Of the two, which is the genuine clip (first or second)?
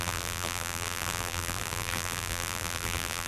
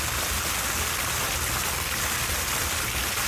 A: second